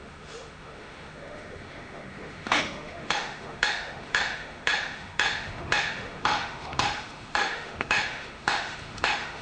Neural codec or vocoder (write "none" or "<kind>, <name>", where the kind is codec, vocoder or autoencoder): autoencoder, DAC-VAE